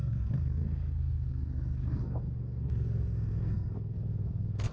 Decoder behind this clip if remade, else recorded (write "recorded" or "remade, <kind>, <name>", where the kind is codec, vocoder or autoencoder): remade, codec, SNAC